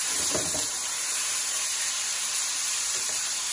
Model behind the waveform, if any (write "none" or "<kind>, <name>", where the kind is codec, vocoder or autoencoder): vocoder, BigVGAN v2